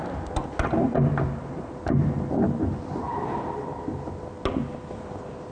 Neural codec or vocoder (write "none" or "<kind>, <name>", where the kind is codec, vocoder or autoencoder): none